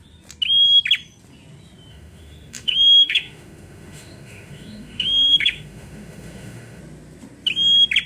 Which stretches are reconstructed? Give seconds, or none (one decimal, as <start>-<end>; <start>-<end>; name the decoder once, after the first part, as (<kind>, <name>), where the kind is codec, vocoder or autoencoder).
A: 1.9-6.8 (autoencoder, DAC-VAE)